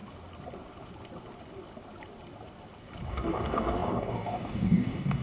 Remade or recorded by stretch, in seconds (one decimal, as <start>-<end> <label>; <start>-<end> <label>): 0.0-3.1 recorded; 3.1-5.2 remade